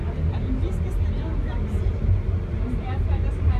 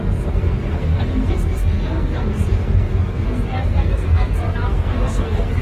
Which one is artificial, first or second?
second